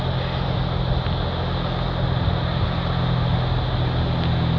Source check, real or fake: real